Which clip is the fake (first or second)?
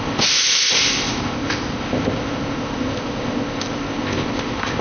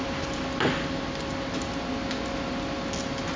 first